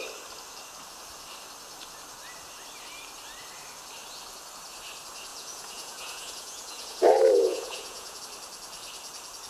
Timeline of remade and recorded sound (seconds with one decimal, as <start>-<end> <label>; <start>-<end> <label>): 0.0-5.3 recorded; 5.3-8.2 remade; 8.2-9.5 recorded